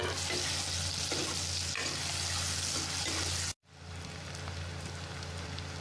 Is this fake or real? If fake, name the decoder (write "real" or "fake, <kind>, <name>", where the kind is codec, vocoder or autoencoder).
real